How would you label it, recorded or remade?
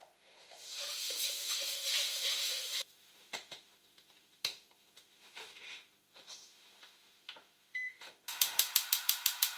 remade